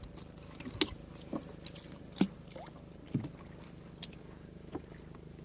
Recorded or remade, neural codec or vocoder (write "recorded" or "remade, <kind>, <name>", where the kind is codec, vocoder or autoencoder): recorded